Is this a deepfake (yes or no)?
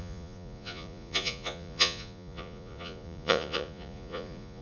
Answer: yes